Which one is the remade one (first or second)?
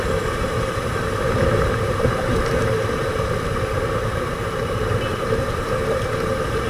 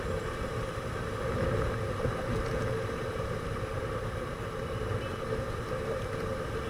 first